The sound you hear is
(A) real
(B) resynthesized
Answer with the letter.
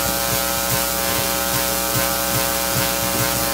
A